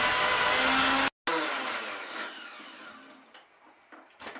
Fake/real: real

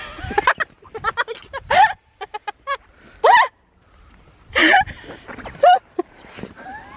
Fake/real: real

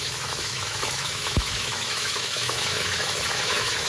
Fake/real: fake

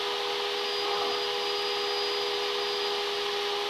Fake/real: real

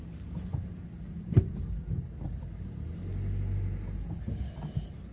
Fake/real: real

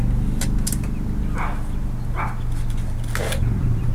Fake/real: real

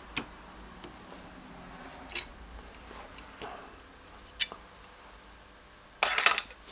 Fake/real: real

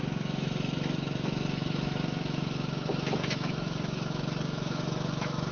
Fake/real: fake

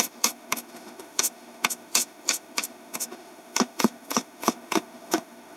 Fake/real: fake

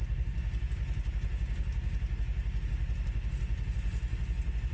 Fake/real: real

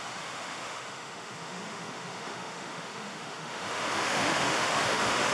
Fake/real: fake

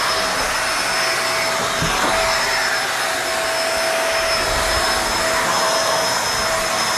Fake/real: real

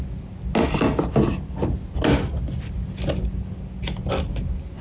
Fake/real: real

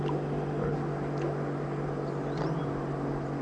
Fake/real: real